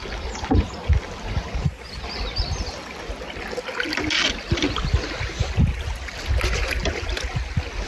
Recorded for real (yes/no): yes